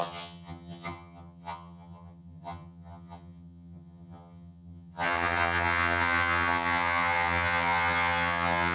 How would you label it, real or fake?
fake